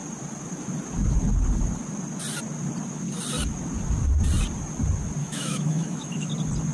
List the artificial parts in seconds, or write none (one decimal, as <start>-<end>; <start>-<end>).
5.2-6.3